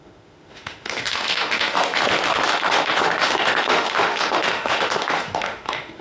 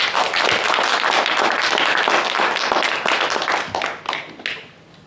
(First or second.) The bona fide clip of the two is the second